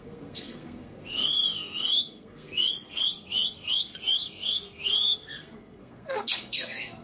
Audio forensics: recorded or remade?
remade